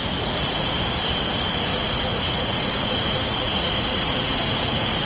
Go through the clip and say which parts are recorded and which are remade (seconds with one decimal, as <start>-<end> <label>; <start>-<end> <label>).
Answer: 0.0-0.8 remade; 0.8-1.7 recorded; 1.7-5.1 remade